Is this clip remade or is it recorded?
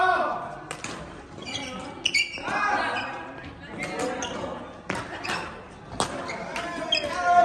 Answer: recorded